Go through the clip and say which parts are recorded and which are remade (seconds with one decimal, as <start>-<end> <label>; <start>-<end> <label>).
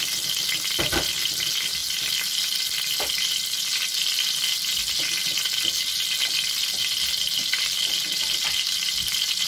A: 0.0-9.5 recorded